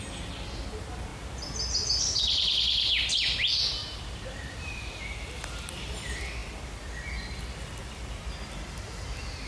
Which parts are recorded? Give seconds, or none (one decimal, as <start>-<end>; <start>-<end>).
0.0-3.8; 5.0-9.5

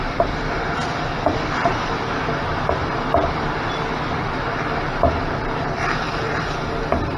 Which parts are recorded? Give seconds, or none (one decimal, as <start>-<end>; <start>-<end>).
2.8-3.4

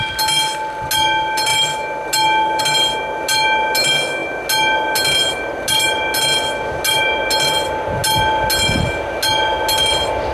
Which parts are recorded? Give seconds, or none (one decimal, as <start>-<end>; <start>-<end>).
0.0-10.3

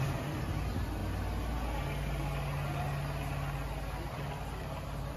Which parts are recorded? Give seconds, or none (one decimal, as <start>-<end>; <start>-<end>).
1.0-4.1

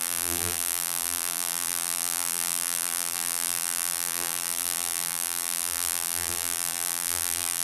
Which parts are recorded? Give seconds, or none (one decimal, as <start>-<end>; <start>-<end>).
none

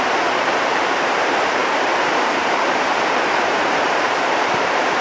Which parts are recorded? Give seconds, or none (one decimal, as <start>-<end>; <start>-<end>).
none